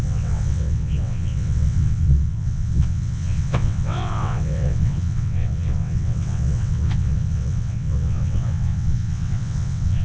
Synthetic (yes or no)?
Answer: yes